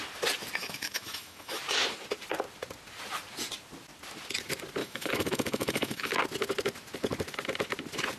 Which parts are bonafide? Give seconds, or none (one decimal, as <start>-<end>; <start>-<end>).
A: 0.0-0.6; 1.6-4.8; 6.1-8.2